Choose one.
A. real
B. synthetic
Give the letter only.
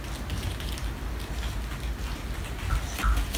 A